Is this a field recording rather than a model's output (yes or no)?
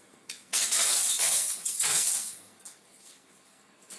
no